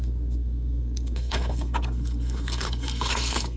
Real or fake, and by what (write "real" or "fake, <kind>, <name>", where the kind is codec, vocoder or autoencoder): fake, codec, SNAC